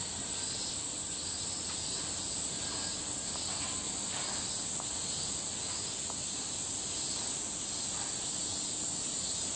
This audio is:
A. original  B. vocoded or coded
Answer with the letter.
A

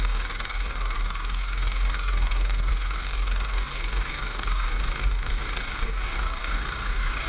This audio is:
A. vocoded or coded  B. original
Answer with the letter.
A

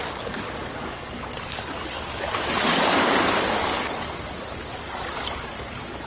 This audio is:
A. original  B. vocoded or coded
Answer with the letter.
B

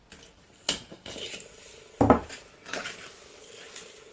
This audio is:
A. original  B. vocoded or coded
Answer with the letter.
A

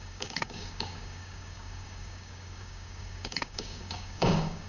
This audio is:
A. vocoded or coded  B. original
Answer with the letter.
A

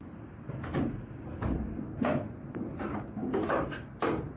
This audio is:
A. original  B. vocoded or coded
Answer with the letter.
A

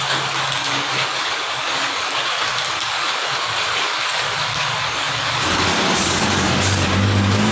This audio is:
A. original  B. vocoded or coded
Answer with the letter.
B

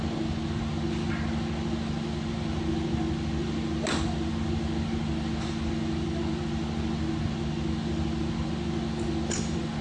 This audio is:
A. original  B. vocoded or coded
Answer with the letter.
A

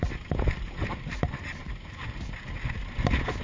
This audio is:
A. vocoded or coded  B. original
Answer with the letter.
B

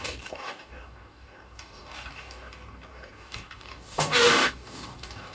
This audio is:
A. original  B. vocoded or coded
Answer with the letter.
B